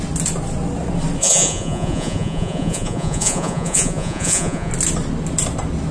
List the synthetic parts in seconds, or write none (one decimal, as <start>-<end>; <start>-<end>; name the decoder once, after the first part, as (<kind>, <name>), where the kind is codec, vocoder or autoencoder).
1.2-4.7 (vocoder, Vocos)